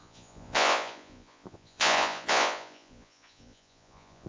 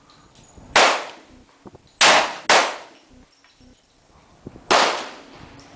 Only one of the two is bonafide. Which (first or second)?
second